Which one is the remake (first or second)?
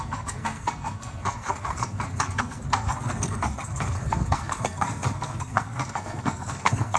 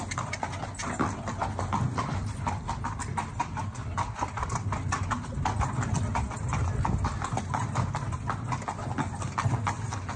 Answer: first